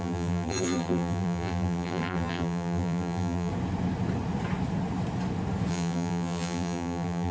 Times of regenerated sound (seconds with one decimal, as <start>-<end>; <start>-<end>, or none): 0.0-3.5; 5.7-7.3